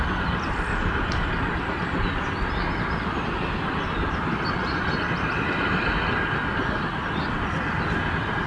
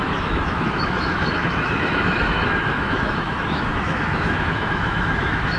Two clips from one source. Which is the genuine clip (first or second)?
first